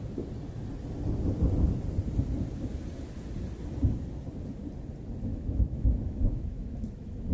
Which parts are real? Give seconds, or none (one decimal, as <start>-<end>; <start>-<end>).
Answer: 0.0-5.3